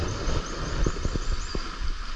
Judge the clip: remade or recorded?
recorded